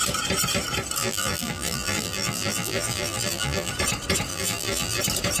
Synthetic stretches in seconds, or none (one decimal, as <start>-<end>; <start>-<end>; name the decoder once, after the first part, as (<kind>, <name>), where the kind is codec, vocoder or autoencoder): 1.0-3.7 (vocoder, BigVGAN v2); 4.3-5.0